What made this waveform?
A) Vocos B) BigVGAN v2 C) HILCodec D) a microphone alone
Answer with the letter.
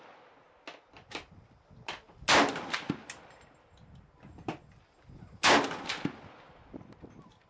D